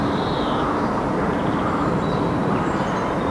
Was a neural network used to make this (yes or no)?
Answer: yes